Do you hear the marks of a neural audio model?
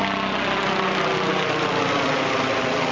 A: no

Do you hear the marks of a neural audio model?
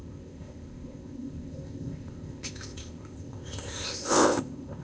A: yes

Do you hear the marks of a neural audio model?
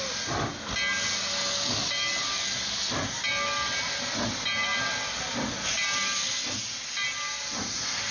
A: no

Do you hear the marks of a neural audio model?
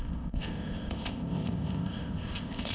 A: yes